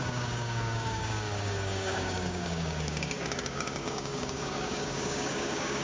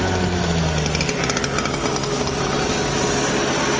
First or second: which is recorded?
second